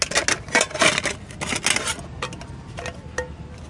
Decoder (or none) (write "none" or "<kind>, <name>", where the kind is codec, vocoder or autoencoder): none